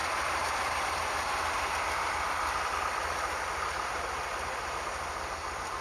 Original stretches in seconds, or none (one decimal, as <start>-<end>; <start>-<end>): 0.0-5.8